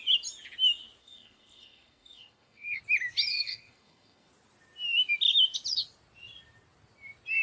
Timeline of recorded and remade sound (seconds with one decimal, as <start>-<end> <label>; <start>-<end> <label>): 0.0-1.0 recorded; 1.0-2.8 remade; 2.8-3.3 recorded; 3.3-4.3 remade; 4.3-7.4 recorded

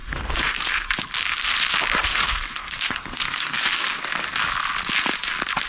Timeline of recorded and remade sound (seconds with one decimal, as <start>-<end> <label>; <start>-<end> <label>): 0.0-0.9 remade; 0.9-2.1 recorded; 2.1-4.0 remade; 4.0-5.7 recorded

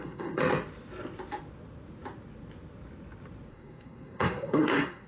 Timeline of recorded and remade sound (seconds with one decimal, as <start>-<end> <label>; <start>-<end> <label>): 0.0-0.4 remade; 0.4-3.5 recorded; 3.5-5.1 remade

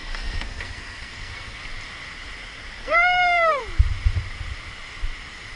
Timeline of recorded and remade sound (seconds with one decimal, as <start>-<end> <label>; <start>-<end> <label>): 0.0-1.6 remade; 1.6-2.8 recorded; 2.8-3.6 remade; 3.6-5.6 recorded